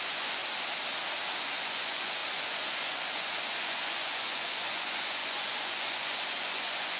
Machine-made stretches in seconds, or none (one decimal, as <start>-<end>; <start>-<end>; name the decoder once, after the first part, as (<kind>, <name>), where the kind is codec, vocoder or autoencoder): 0.0-0.4 (vocoder, Vocos); 1.4-7.0

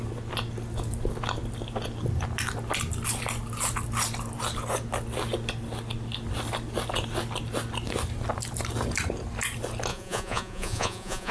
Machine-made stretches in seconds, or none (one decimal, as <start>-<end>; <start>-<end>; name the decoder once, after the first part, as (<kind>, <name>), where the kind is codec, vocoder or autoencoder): 9.9-11.3 (vocoder, Vocos)

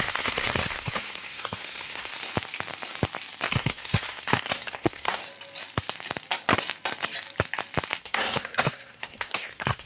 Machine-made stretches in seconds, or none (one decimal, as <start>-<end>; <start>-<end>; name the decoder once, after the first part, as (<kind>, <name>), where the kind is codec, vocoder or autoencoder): 0.0-2.1 (codec, SNAC); 3.5-5.2; 8.0-9.9

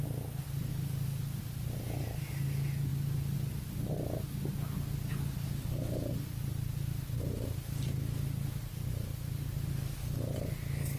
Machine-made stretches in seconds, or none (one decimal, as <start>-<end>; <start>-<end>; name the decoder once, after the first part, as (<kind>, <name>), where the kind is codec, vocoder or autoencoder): none

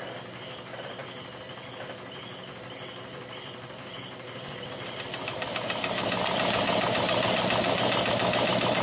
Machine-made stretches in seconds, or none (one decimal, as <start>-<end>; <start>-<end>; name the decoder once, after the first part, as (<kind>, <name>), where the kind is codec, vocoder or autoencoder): none

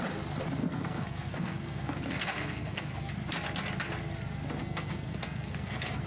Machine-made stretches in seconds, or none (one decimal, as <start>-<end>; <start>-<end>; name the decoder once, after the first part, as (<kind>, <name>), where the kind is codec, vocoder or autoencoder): 0.6-3.1 (codec, SNAC); 4.6-6.1

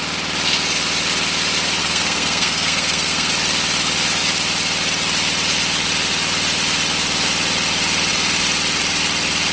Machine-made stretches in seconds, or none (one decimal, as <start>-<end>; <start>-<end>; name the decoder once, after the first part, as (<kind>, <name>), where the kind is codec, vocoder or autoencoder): 1.8-3.3 (codec, SNAC)